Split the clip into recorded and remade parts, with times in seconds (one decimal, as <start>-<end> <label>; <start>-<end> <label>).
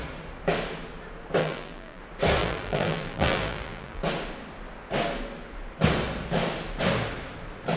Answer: 0.0-1.4 recorded; 1.4-2.0 remade; 2.0-2.4 recorded; 2.4-4.0 remade; 4.0-7.8 recorded